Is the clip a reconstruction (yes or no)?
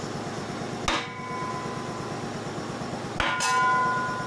no